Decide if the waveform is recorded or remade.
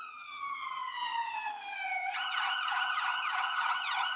remade